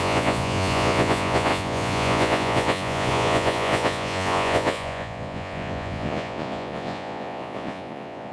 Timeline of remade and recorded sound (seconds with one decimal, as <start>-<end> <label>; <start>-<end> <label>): 0.0-8.3 remade